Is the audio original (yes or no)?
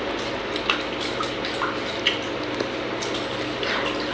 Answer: yes